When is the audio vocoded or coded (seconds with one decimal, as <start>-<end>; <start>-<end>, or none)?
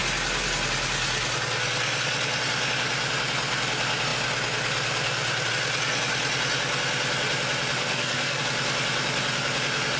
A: 7.8-8.4